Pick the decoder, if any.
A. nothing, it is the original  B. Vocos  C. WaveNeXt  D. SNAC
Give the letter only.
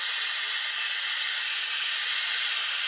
A